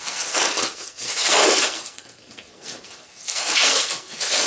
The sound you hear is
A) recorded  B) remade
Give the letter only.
B